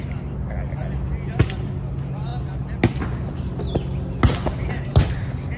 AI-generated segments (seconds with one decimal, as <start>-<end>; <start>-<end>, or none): none